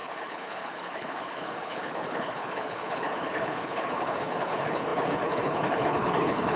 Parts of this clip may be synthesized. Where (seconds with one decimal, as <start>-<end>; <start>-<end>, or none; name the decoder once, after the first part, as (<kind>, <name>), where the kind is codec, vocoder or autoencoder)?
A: 0.0-6.6 (codec, HILCodec)